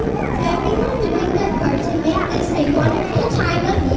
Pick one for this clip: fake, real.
fake